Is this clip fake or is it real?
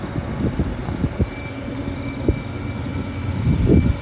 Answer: real